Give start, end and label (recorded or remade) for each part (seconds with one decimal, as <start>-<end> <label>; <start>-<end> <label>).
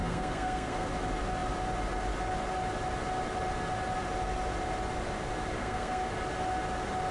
0.0-0.9 remade; 0.9-5.6 recorded; 5.6-6.1 remade; 6.1-7.1 recorded